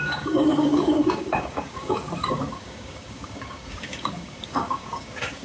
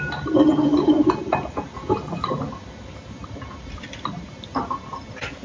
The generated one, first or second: first